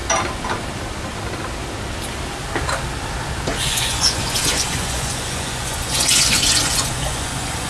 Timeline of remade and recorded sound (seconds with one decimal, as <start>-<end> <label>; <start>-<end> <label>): 0.0-3.6 recorded; 3.6-7.7 remade